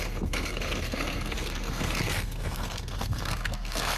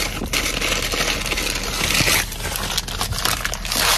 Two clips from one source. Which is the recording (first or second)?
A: second